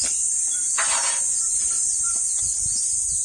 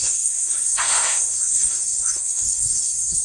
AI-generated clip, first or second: second